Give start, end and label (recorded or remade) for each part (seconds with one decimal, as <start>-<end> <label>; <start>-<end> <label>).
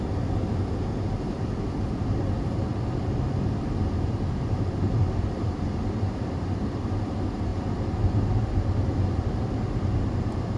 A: 0.0-2.7 remade; 2.7-4.0 recorded; 4.0-7.5 remade; 7.5-8.8 recorded; 8.8-10.6 remade